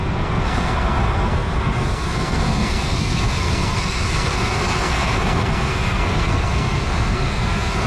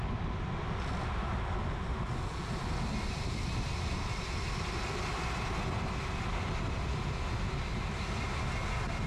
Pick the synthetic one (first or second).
first